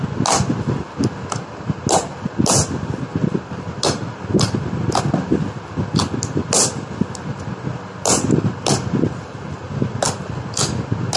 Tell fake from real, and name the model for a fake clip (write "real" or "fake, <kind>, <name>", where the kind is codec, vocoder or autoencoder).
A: real